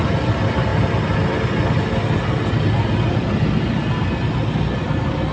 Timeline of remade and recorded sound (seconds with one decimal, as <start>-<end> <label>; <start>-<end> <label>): 0.0-5.3 recorded